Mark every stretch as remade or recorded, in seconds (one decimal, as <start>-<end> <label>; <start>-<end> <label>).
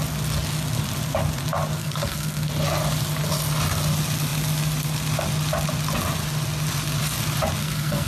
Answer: 0.0-1.8 recorded; 1.8-2.5 remade; 2.5-7.6 recorded; 7.6-8.1 remade